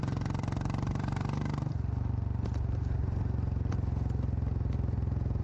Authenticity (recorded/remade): recorded